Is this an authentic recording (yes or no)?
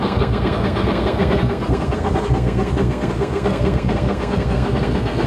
no